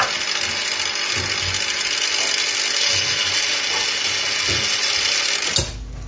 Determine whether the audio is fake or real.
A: real